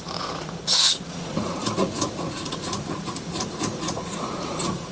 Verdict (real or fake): fake